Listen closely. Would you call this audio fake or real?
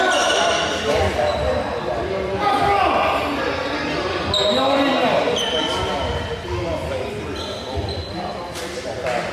real